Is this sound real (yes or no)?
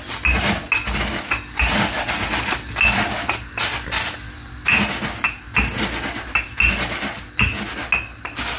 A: yes